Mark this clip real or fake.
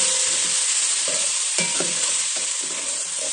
real